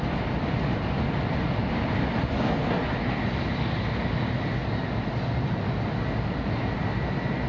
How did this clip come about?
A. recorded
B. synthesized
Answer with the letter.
A